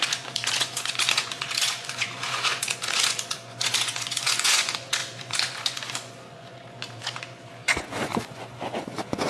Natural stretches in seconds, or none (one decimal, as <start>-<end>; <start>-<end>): none